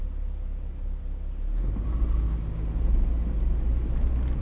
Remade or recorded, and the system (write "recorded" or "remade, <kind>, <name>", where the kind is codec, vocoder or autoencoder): recorded